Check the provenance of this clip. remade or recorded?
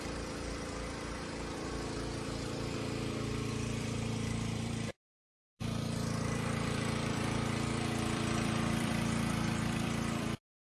remade